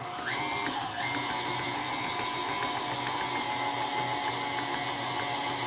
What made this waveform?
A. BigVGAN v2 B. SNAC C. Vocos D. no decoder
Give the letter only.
D